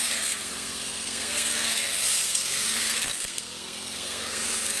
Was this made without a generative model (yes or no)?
no